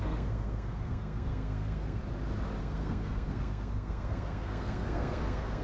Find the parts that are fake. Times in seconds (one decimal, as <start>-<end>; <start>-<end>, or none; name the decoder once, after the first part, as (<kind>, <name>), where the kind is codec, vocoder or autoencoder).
0.0-2.0 (codec, SNAC); 2.6-5.6